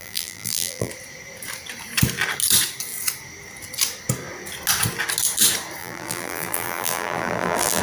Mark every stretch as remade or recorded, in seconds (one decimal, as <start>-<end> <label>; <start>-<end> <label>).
0.0-0.9 remade; 0.9-5.8 recorded; 5.8-7.8 remade